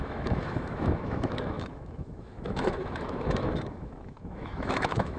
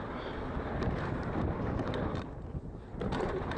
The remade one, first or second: first